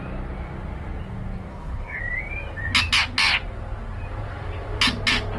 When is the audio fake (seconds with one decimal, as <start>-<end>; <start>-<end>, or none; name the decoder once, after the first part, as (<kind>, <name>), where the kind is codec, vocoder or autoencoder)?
1.5-2.0 (codec, HILCodec)